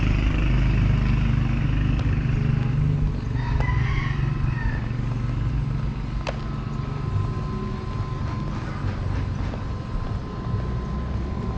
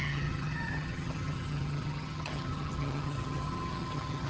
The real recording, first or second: first